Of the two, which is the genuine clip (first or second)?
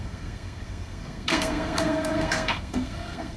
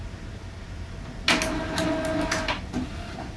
second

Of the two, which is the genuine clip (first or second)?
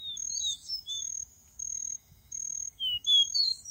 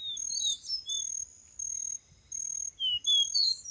second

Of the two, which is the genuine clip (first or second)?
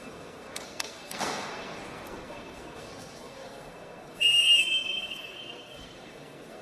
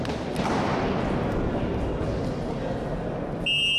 second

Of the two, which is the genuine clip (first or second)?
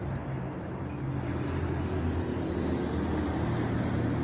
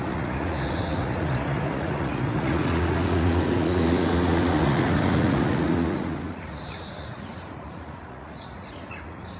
first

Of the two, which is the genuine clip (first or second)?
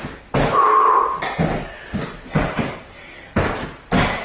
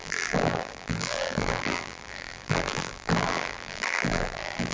first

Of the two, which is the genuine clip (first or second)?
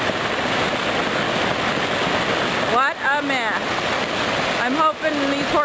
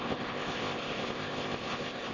first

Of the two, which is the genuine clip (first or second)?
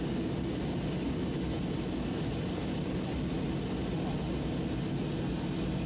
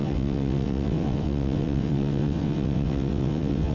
first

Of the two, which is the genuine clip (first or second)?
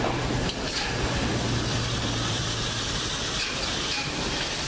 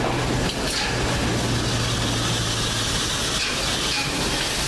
second